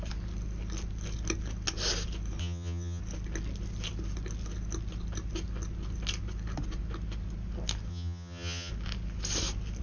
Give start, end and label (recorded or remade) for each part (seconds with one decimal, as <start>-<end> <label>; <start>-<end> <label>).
0.0-2.4 recorded; 2.4-3.0 remade; 3.0-7.9 recorded; 7.9-8.7 remade; 8.7-9.8 recorded